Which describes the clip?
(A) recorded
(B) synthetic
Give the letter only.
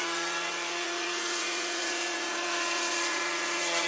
B